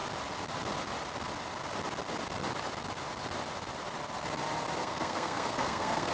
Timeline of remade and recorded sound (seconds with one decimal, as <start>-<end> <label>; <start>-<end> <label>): 0.0-4.8 recorded; 4.8-6.1 remade